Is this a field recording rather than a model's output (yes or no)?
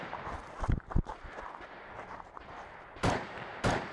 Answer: no